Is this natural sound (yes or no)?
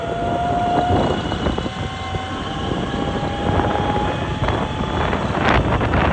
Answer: yes